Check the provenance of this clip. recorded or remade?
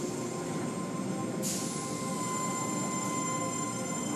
recorded